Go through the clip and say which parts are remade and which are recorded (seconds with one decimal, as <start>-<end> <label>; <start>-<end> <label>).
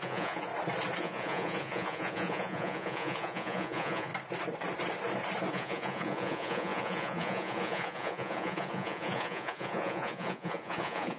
0.0-0.5 remade; 0.5-1.0 recorded; 1.0-4.1 remade; 4.1-5.5 recorded; 5.5-11.2 remade